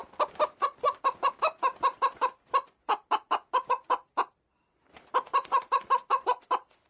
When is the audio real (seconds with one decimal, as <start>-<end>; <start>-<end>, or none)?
0.0-4.5